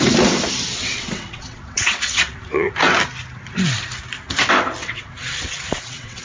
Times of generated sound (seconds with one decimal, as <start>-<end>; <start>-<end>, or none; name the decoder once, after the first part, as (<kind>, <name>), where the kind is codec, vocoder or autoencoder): 0.8-2.7 (vocoder, WaveNeXt); 4.8-6.2